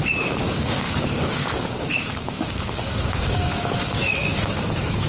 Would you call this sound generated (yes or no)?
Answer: yes